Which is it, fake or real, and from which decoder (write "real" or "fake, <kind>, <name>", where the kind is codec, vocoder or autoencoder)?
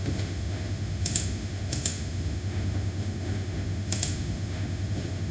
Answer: fake, autoencoder, DAC-VAE